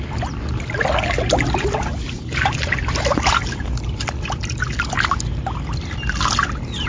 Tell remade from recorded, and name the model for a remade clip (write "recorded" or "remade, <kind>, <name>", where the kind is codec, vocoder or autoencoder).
recorded